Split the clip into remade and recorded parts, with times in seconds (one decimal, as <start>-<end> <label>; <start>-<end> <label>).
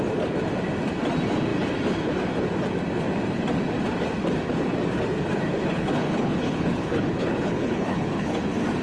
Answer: 0.0-5.5 recorded; 5.5-8.3 remade; 8.3-8.8 recorded